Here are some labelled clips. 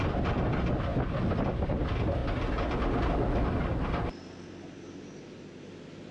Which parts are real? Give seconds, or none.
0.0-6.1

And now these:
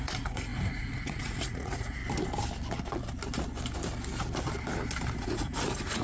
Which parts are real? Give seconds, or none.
2.0-5.2

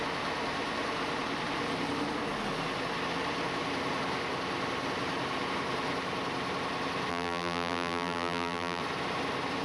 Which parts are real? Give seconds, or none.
0.0-7.1; 8.8-9.6

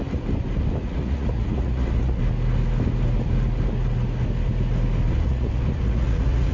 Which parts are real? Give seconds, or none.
0.0-0.8; 2.2-5.1

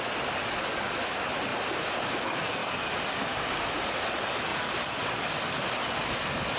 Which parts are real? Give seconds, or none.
0.0-1.5; 2.2-4.5; 5.3-6.6

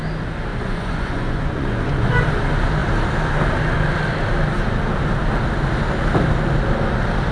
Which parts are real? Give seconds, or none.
0.0-0.5; 2.1-7.3

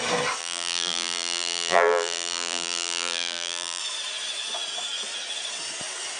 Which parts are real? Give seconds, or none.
0.0-0.4; 3.8-6.2